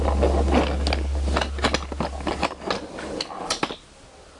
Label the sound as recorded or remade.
recorded